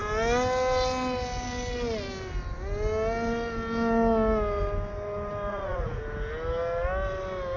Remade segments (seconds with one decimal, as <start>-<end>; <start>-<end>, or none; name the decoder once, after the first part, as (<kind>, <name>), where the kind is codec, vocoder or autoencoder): 5.5-6.0 (vocoder, Vocos)